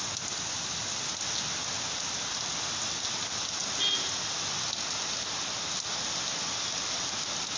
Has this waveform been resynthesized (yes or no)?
no